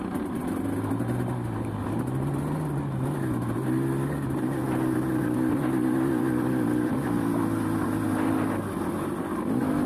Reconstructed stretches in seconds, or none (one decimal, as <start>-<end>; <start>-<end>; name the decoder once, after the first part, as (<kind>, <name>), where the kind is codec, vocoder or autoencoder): none